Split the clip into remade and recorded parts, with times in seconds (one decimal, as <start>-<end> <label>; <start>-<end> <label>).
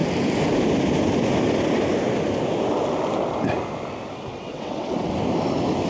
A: 0.0-4.3 recorded; 4.3-5.1 remade; 5.1-5.9 recorded